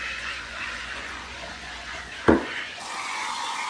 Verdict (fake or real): fake